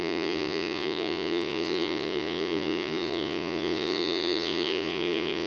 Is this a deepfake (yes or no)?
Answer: yes